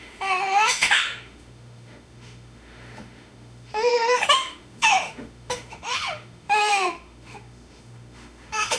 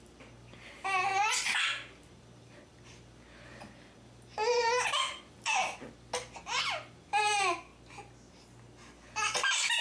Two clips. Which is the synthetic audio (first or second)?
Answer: first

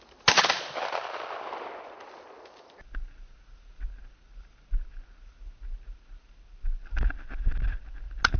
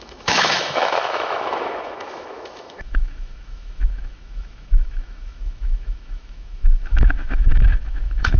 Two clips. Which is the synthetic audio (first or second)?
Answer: second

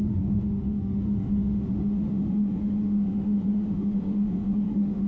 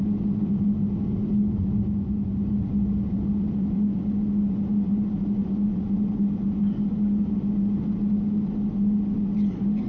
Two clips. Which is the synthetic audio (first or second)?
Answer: first